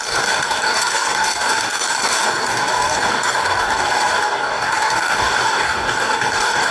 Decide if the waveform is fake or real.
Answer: fake